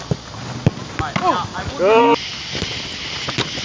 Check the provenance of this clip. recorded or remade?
recorded